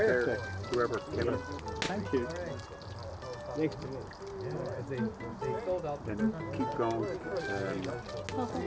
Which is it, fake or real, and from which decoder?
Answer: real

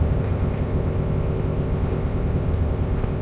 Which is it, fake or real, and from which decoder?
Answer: fake, codec, ZipCodec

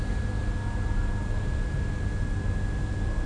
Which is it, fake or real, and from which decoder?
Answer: real